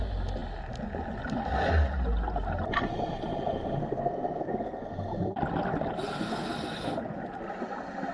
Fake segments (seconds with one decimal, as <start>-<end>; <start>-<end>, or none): 3.8-4.8